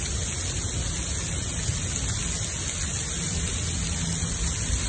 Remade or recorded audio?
recorded